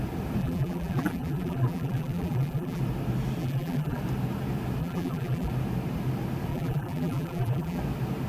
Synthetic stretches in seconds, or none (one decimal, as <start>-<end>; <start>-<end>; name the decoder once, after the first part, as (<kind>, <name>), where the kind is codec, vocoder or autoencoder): 0.4-2.8 (vocoder, BigVGAN v2); 3.4-4.0; 4.8-5.5; 6.5-7.8